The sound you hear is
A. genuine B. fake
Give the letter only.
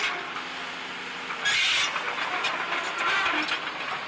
A